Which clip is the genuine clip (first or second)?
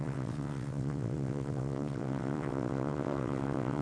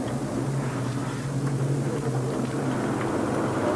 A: second